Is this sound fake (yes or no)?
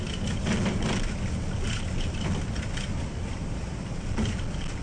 no